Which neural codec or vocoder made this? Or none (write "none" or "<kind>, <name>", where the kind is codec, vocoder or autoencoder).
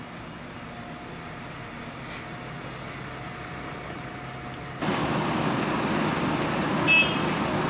none